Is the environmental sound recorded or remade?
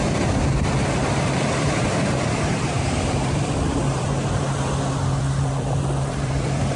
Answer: remade